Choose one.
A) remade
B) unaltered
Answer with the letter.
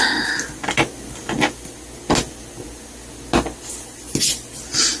B